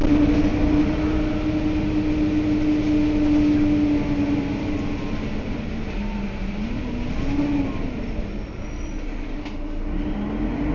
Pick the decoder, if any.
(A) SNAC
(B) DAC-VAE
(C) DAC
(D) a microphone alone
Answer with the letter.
D